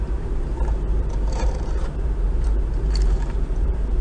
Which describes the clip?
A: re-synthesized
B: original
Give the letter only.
A